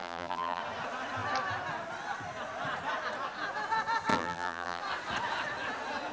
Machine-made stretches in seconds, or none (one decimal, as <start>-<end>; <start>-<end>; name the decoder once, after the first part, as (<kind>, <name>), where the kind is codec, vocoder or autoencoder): 0.0-0.6 (vocoder, BigVGAN v2); 4.1-4.8

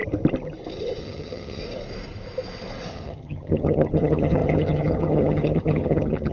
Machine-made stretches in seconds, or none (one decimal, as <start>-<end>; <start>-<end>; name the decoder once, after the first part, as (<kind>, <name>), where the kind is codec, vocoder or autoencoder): 1.0-1.6 (vocoder, HiFi-GAN); 2.9-6.3

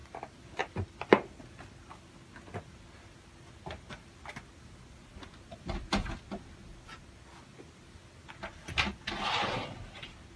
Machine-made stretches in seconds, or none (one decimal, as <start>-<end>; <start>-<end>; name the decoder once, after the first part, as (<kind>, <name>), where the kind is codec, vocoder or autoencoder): none

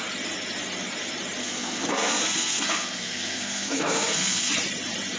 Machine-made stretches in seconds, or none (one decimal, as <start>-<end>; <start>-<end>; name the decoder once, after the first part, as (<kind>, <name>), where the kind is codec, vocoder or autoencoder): 1.4-4.5 (codec, SNAC)

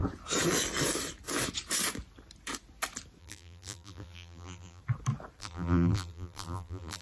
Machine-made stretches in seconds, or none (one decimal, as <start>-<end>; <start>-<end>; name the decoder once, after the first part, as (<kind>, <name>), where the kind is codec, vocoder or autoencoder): 3.2-4.8 (vocoder, BigVGAN v2); 5.4-7.0